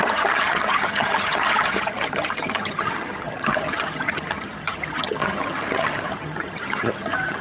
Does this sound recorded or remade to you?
remade